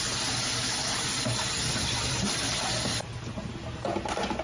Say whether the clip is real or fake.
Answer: real